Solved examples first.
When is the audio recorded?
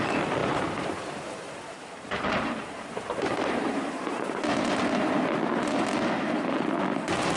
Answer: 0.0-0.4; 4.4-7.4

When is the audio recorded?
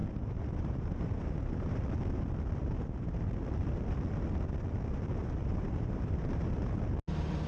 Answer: 1.8-2.6; 3.4-5.2; 6.6-7.5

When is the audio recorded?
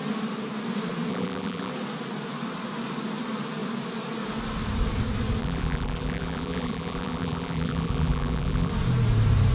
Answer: 0.0-1.1; 1.7-5.4; 8.7-9.5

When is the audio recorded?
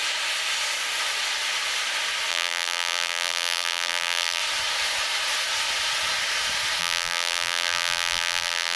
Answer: 0.0-2.3; 4.4-6.8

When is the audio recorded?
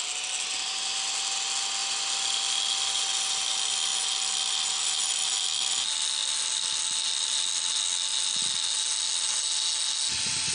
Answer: 0.0-10.5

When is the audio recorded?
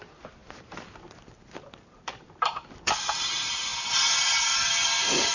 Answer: 3.7-5.3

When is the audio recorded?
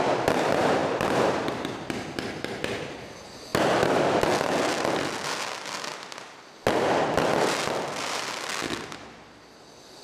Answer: 0.0-0.8; 1.7-10.0